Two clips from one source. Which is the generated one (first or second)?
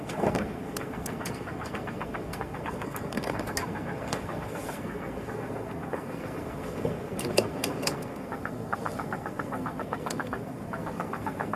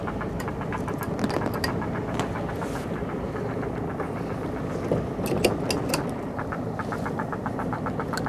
first